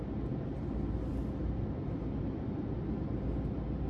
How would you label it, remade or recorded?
recorded